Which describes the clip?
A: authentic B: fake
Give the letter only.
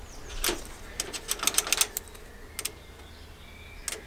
A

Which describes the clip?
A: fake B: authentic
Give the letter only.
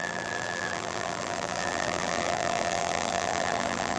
A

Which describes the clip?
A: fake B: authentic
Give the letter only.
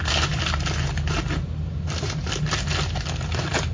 B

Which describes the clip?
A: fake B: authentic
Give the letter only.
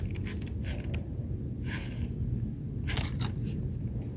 B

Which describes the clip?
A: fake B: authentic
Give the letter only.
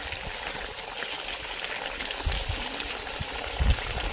B